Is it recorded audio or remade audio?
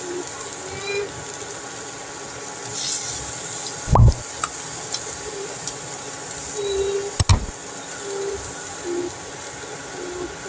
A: recorded